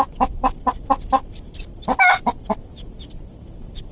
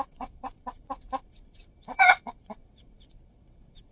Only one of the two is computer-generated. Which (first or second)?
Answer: second